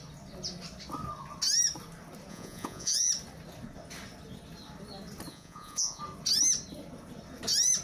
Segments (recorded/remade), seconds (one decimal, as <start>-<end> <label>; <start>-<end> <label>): 0.0-2.3 recorded; 2.3-3.1 remade; 3.1-5.3 recorded; 5.3-6.0 remade; 6.0-7.8 recorded